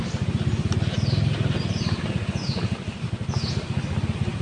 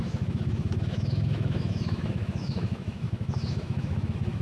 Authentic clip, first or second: first